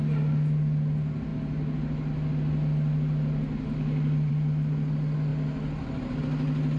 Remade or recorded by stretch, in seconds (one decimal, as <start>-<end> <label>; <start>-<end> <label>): 0.0-6.8 recorded